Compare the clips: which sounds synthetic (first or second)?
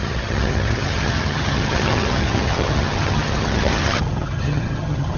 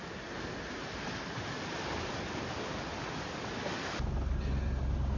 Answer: first